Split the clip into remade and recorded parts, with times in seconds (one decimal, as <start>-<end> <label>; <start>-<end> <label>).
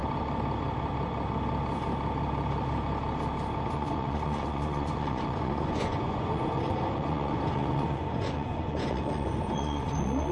0.0-3.7 recorded; 3.7-10.3 remade